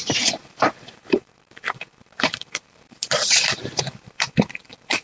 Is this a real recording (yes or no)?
no